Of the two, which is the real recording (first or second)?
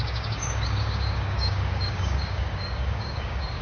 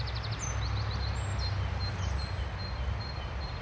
second